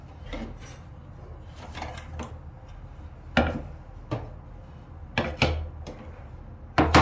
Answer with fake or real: real